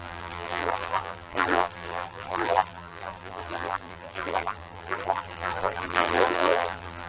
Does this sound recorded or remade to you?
remade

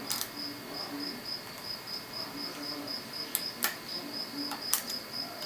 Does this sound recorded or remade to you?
recorded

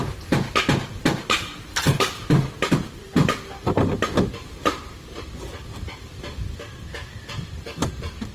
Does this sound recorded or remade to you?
recorded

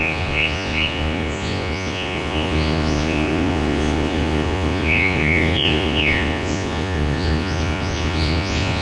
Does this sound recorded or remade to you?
remade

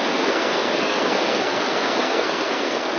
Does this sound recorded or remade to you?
remade